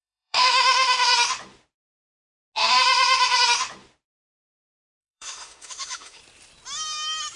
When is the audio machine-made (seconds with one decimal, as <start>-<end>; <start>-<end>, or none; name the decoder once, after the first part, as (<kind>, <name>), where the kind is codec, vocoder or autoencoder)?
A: 0.0-1.1 (autoencoder, DAC-VAE); 5.0-6.2

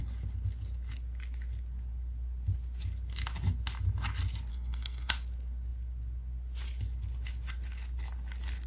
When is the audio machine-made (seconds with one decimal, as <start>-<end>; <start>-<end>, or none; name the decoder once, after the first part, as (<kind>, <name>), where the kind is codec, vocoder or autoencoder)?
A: 4.5-5.1 (codec, SNAC)

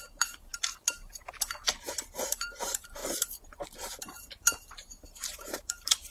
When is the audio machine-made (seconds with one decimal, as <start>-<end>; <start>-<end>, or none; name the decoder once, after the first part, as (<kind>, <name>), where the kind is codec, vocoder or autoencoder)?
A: 0.0-0.5 (vocoder, BigVGAN v2); 2.2-3.0; 4.0-6.1

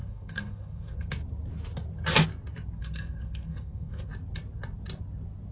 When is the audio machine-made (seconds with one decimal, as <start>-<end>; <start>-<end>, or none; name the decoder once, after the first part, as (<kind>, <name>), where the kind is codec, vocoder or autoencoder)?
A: 0.0-1.1 (codec, SNAC); 2.8-4.1

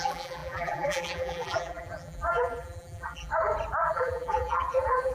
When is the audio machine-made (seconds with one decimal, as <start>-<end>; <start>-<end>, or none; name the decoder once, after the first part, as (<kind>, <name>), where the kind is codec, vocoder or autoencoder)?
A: 0.0-3.3 (vocoder, BigVGAN v2); 3.8-5.1

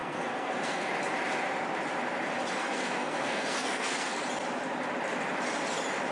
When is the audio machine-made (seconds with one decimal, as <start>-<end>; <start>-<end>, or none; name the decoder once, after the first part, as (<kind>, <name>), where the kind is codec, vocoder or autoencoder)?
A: 0.0-0.9 (codec, SNAC); 2.6-4.2

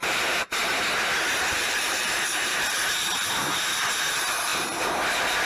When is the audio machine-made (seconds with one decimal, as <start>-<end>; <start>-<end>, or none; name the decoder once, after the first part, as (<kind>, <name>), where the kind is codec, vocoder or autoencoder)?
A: 0.0-0.7 (vocoder, BigVGAN v2); 1.5-5.5